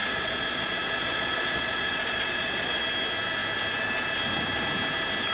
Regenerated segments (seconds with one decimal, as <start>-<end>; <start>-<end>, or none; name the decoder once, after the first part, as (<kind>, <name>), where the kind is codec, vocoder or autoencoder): 0.0-2.8 (vocoder, Vocos)